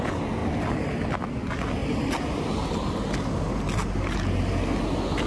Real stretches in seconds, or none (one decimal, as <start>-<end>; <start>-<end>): 0.0-5.3

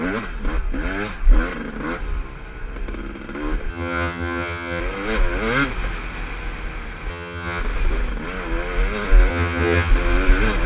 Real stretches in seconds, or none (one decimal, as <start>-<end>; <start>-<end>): 0.0-3.7; 4.8-7.1; 7.6-9.3; 9.9-10.7

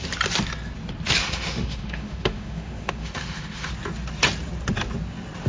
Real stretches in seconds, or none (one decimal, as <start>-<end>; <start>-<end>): 0.0-1.2; 3.7-5.5

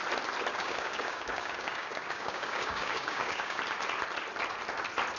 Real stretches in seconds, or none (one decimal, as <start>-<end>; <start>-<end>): 0.0-0.5; 3.6-5.2

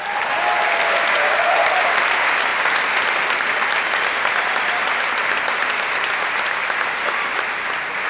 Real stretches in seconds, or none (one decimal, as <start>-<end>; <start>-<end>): 0.0-8.1

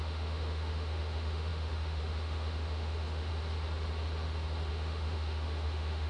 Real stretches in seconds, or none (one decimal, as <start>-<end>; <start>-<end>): 3.3-4.7

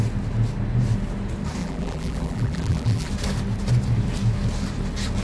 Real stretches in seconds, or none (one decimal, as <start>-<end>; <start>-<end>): 0.0-1.6; 3.1-5.2